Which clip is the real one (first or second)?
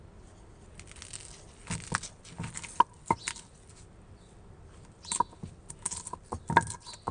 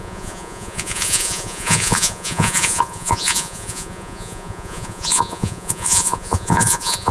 first